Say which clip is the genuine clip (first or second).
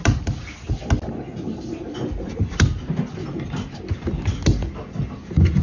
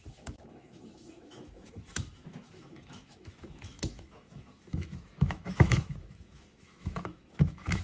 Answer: first